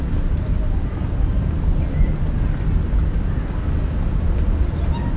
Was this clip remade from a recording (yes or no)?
no